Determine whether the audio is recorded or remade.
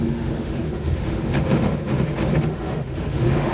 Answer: remade